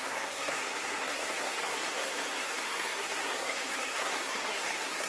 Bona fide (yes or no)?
no